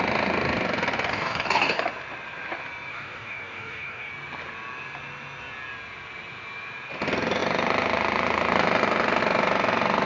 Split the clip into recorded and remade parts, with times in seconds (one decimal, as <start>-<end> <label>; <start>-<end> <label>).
0.0-1.1 recorded; 1.1-1.8 remade; 1.8-2.9 recorded; 2.9-4.1 remade; 4.1-10.1 recorded

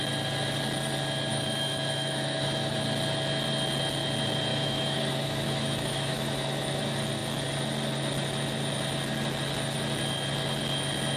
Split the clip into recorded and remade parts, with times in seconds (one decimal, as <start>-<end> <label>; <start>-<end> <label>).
0.0-1.3 recorded; 1.3-2.8 remade; 2.8-4.5 recorded; 4.5-6.8 remade; 6.8-11.2 recorded

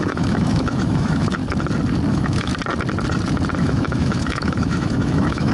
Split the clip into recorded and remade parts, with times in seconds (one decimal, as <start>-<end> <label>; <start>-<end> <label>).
0.0-1.4 remade; 1.4-2.1 recorded; 2.1-2.5 remade; 2.5-3.6 recorded; 3.6-5.5 remade

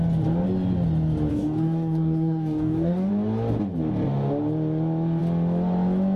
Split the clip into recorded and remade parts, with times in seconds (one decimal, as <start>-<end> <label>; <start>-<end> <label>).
0.0-1.3 recorded; 1.3-3.1 remade; 3.1-6.2 recorded

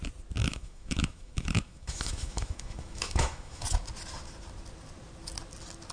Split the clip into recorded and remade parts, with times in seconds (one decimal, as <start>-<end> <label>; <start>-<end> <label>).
0.0-0.4 recorded; 0.4-3.6 remade; 3.6-5.9 recorded

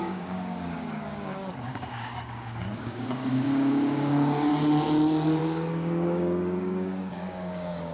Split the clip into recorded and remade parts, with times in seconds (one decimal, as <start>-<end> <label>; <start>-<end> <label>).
0.0-4.5 remade; 4.5-5.4 recorded; 5.4-7.9 remade

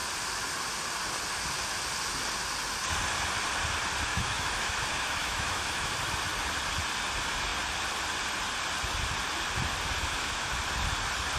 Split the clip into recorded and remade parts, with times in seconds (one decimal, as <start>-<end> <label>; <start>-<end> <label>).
0.0-4.1 recorded; 4.1-5.9 remade; 5.9-10.0 recorded; 10.0-10.6 remade; 10.6-11.4 recorded